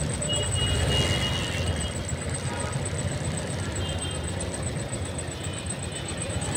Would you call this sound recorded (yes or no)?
yes